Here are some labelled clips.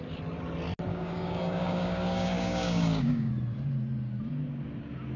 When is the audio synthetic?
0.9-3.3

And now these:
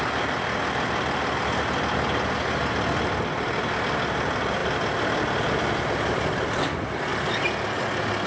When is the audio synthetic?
none

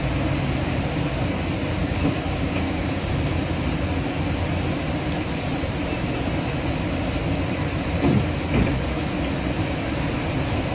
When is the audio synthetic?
1.8-3.0

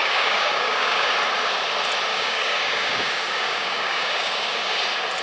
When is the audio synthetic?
0.0-1.1; 2.1-4.8